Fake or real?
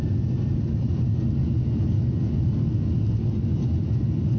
real